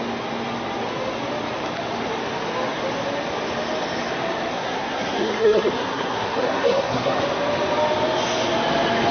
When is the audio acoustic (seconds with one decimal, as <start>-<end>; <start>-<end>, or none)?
0.0-4.5; 7.2-9.1